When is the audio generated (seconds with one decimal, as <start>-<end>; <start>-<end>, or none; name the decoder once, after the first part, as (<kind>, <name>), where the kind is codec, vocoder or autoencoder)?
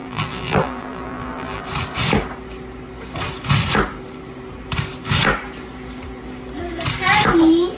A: 0.0-1.6 (vocoder, BigVGAN v2)